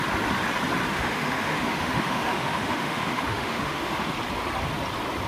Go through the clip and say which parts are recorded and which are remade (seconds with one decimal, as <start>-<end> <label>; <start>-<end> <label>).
0.0-0.9 recorded; 0.9-4.1 remade; 4.1-5.3 recorded